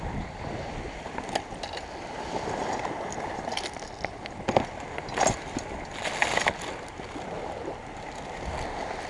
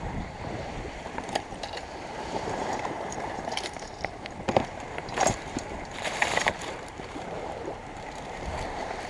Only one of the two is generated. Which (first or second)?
second